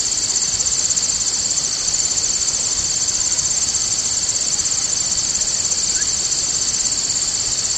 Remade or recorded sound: recorded